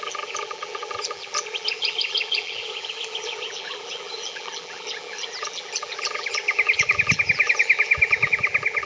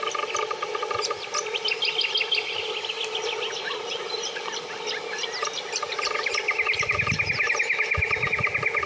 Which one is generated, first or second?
first